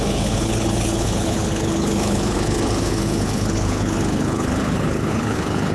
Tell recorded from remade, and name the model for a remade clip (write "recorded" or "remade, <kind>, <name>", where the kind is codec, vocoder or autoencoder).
remade, codec, HILCodec